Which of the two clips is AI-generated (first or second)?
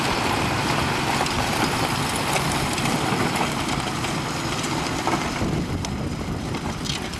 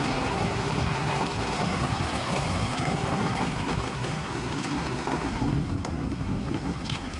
second